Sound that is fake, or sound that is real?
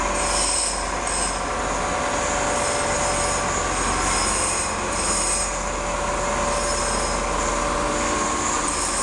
real